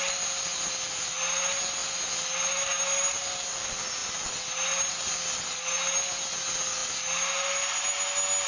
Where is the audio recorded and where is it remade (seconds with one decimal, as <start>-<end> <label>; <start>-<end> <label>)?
0.0-8.5 recorded